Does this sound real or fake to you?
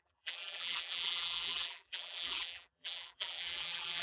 fake